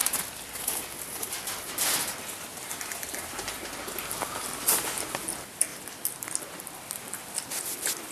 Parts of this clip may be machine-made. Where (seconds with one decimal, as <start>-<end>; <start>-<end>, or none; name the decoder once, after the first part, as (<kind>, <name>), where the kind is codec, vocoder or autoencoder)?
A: 0.0-4.0 (vocoder, BigVGAN v2); 5.7-8.1